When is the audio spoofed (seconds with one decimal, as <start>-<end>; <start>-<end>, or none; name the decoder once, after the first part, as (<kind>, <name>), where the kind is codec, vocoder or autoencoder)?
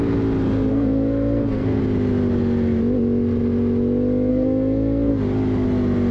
0.7-1.8 (codec, SNAC); 4.3-5.1